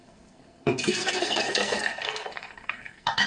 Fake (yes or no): yes